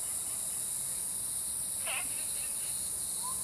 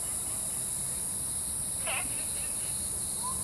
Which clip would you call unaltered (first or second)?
first